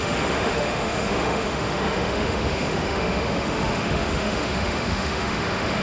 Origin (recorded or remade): remade